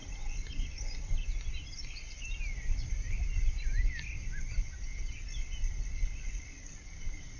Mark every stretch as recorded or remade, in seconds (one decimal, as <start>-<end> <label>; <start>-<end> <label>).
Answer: 0.0-7.4 recorded